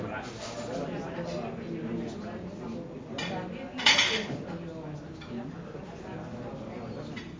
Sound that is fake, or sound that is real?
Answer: real